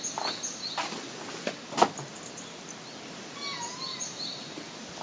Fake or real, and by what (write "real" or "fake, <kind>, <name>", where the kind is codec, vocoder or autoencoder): real